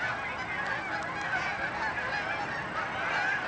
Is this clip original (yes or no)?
yes